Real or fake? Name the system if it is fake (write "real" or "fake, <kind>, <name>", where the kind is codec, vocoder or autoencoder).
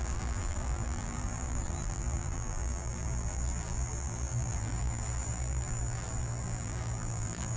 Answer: fake, vocoder, BigVGAN v2